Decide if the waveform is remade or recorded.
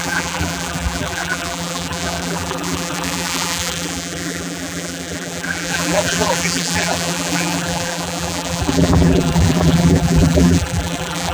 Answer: remade